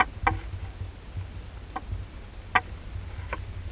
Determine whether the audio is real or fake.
real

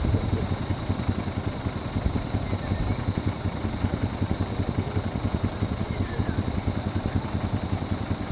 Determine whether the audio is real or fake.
real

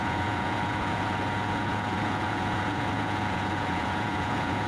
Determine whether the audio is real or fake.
fake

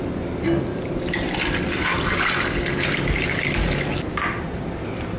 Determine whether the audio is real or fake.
real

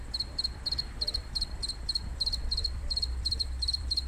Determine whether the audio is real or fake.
fake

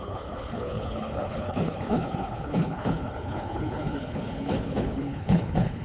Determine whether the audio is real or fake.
fake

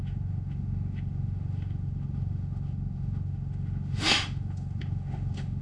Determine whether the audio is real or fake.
fake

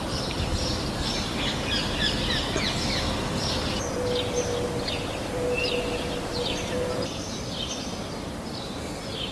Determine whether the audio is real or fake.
real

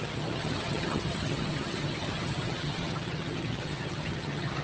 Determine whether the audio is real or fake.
fake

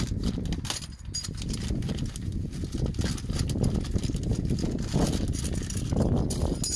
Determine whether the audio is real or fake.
real